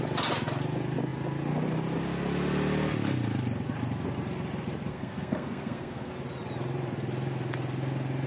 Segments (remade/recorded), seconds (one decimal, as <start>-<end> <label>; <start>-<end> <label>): 0.0-4.9 recorded; 4.9-6.1 remade; 6.1-8.3 recorded